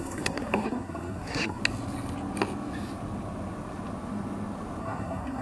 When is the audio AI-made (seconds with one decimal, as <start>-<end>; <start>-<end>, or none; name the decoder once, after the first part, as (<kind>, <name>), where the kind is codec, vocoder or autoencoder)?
0.0-1.6 (codec, SNAC); 4.8-5.4